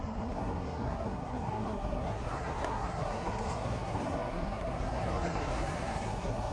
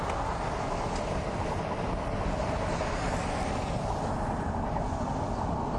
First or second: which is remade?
first